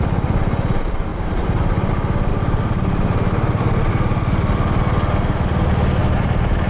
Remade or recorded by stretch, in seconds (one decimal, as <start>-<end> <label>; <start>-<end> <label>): 0.0-1.1 recorded; 1.1-1.9 remade; 1.9-2.3 recorded; 2.3-3.9 remade; 3.9-6.0 recorded; 6.0-6.7 remade